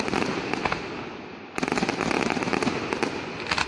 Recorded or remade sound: recorded